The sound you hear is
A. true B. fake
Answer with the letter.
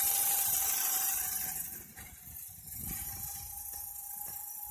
B